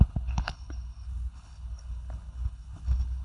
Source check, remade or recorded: remade